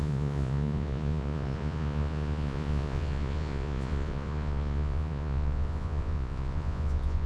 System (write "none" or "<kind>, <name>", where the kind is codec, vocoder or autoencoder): vocoder, Vocos